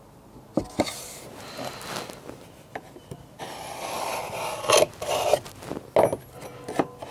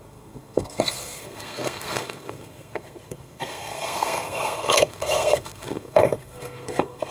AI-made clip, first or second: second